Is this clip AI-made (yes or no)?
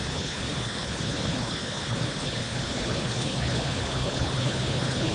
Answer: yes